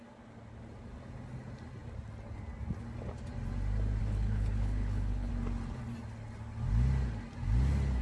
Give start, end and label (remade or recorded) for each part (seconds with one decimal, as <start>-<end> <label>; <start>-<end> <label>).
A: 0.0-4.0 recorded; 4.0-5.3 remade; 5.3-8.0 recorded